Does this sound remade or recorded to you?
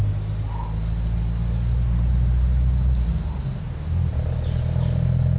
recorded